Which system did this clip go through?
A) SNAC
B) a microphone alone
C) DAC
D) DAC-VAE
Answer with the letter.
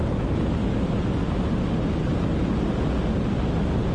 B